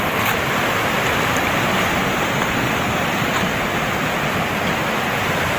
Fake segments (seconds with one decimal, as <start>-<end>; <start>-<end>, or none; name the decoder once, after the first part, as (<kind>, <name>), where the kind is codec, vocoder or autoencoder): 3.5-4.1 (vocoder, BigVGAN v2)